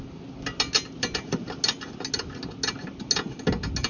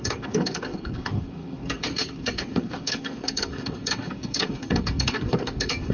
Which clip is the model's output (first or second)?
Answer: second